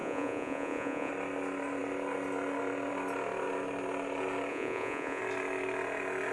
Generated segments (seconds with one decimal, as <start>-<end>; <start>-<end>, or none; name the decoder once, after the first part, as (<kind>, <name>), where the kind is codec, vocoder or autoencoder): 0.0-1.1 (vocoder, Vocos); 4.5-5.2